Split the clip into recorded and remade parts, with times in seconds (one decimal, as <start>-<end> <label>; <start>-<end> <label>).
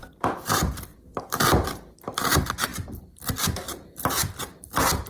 0.0-5.1 remade